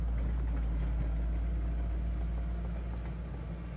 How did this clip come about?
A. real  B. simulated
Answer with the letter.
A